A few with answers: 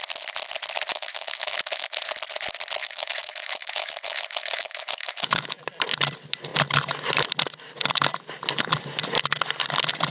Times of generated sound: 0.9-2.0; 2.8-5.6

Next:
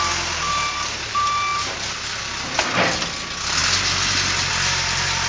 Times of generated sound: none

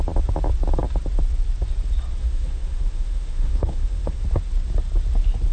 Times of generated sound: 2.2-4.2

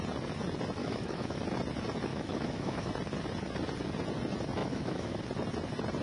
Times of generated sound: 0.8-1.4; 2.1-2.9; 4.6-5.2

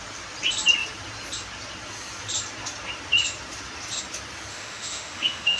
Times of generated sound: 4.5-5.6